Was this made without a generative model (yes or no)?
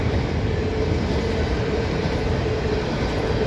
yes